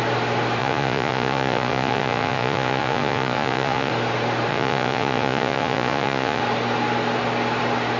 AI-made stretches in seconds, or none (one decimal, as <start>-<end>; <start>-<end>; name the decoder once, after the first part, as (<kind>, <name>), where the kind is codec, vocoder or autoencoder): 0.6-3.9 (vocoder, Vocos); 4.5-6.4